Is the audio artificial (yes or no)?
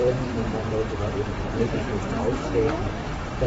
yes